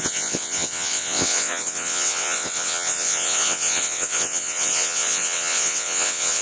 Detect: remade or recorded remade